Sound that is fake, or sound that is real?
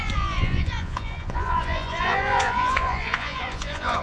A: fake